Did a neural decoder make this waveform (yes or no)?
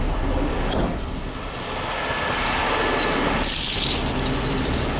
yes